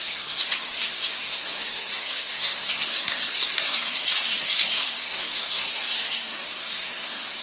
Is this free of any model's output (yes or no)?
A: no